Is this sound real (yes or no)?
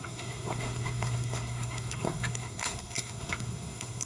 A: no